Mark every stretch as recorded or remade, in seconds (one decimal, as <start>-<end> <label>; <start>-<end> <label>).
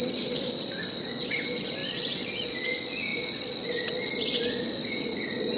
0.0-5.6 remade